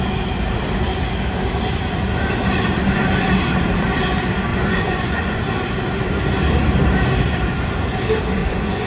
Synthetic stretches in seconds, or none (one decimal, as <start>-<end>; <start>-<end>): 4.5-5.4; 8.4-8.9